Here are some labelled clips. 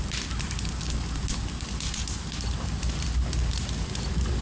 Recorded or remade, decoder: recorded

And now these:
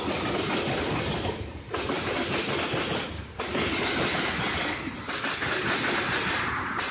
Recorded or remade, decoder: recorded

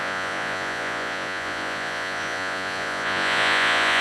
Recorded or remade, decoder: remade, vocoder, Vocos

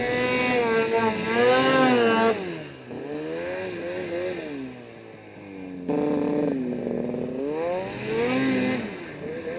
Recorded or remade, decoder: recorded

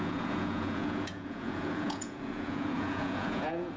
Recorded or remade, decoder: remade, vocoder, Vocos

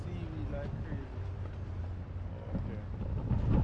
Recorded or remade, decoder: recorded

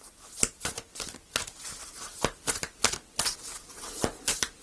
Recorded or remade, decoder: recorded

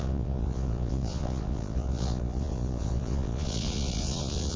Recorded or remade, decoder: remade, vocoder, Vocos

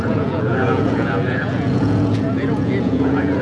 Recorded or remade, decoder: remade, vocoder, Vocos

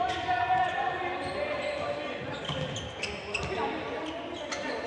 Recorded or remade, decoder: recorded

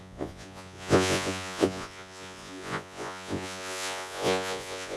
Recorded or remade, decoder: remade, vocoder, Vocos